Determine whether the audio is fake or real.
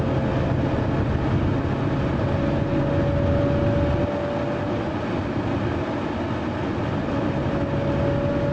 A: real